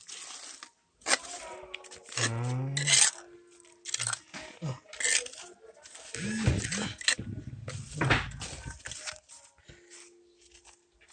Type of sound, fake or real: real